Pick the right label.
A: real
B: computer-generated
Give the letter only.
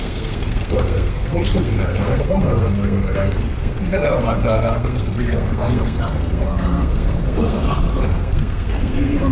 B